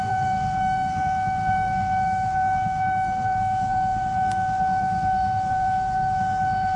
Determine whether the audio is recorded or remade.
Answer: remade